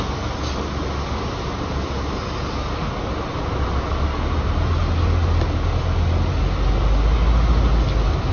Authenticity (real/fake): real